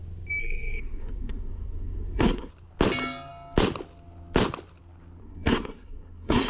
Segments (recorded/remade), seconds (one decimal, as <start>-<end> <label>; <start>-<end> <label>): 0.0-0.4 recorded; 0.4-2.5 remade; 2.5-5.2 recorded; 5.2-6.5 remade